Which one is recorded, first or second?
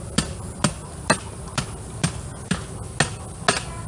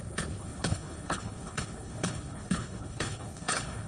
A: first